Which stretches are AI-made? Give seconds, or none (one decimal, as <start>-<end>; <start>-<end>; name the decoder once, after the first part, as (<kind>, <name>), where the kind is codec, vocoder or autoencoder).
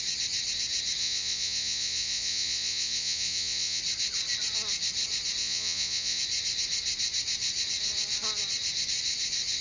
1.0-3.8 (vocoder, Vocos); 5.4-6.2